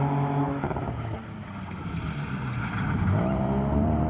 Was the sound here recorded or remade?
recorded